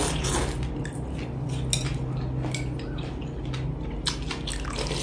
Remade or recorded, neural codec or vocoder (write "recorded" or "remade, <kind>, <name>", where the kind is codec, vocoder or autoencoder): recorded